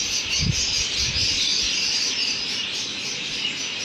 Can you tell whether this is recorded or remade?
recorded